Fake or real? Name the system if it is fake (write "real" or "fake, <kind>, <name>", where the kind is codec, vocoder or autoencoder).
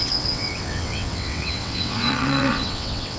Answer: fake, vocoder, WaveNeXt